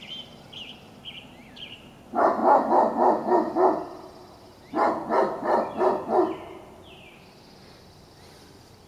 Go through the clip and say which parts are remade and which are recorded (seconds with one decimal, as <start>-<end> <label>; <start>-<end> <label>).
0.0-8.9 recorded